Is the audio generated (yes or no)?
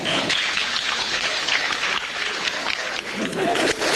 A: yes